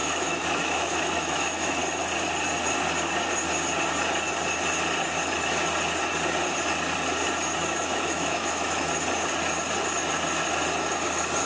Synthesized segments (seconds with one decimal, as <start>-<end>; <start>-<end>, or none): 0.0-1.8; 7.6-8.9